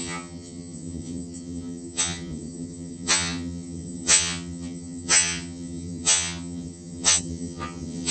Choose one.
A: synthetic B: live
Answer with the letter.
A